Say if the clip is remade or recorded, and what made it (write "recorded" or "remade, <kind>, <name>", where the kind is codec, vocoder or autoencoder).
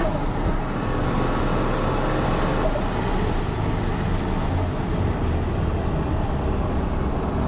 recorded